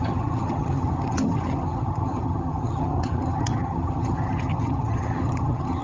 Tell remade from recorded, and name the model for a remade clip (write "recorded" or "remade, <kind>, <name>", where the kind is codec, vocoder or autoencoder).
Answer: remade, vocoder, HiFi-GAN